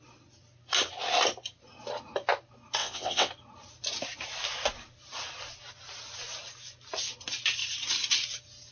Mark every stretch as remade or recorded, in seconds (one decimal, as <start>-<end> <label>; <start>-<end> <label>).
0.0-2.8 recorded; 2.8-3.3 remade; 3.3-8.7 recorded